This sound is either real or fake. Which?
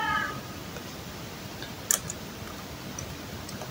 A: real